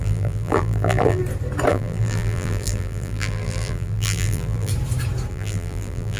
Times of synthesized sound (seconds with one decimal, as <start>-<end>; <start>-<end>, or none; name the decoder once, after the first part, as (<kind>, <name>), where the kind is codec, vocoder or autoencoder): 0.0-1.2 (vocoder, BigVGAN v2); 1.7-4.7; 5.3-6.2